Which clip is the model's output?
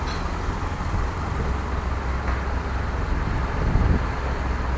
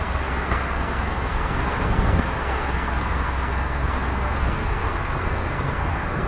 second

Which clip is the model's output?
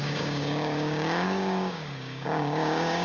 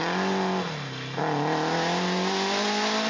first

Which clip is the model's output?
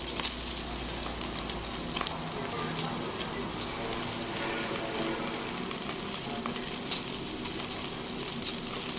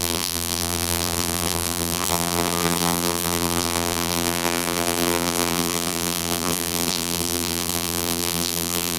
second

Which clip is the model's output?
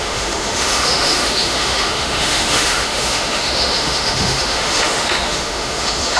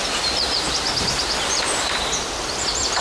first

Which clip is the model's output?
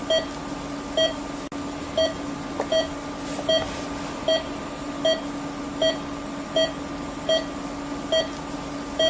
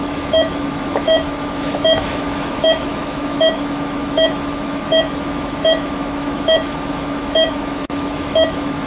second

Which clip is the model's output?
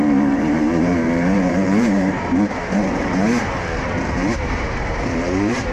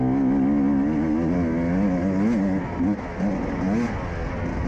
first